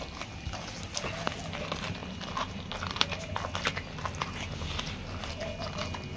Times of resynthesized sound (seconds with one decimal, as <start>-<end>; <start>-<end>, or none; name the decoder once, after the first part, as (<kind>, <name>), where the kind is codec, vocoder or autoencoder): none